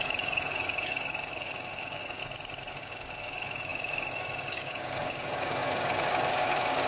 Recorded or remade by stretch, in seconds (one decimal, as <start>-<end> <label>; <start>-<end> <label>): 0.0-2.2 remade; 2.2-2.8 recorded; 2.8-6.9 remade

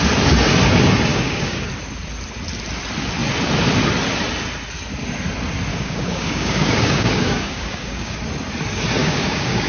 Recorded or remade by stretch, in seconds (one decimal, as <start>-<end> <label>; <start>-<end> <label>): 0.0-1.1 recorded; 1.1-1.7 remade; 1.7-5.7 recorded; 5.7-8.2 remade; 8.2-9.0 recorded; 9.0-9.7 remade

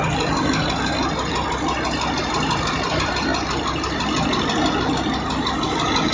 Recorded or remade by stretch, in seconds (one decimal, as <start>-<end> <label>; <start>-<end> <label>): 0.0-6.1 recorded

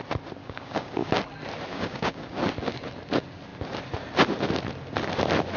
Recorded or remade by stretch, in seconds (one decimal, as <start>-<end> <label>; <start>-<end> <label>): 0.0-0.4 recorded; 0.4-1.1 remade; 1.1-1.7 recorded; 1.7-2.4 remade; 2.4-5.6 recorded